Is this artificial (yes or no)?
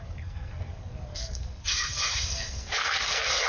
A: yes